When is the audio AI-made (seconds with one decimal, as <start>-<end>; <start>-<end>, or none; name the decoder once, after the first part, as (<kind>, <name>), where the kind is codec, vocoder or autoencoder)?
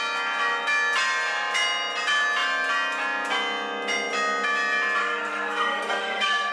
5.0-6.5 (codec, SNAC)